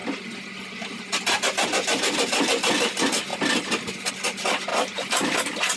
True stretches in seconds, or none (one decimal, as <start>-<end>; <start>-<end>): 0.0-5.8